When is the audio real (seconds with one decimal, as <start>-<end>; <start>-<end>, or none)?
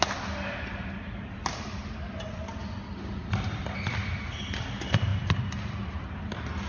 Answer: 0.0-6.7